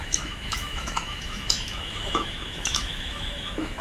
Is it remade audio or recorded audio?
remade